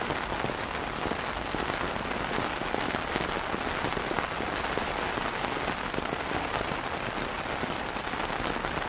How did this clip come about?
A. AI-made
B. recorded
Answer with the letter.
B